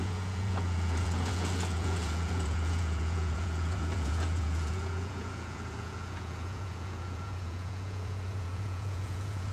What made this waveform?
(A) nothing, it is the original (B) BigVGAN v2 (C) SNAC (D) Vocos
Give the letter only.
D